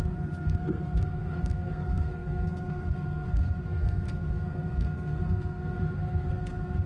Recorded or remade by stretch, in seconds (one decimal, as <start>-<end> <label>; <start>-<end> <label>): 0.0-6.9 remade